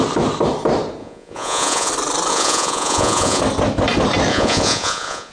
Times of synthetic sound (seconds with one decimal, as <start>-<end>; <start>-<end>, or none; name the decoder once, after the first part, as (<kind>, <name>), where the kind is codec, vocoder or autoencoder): 1.0-1.9 (vocoder, Vocos); 2.3-3.4; 4.3-5.3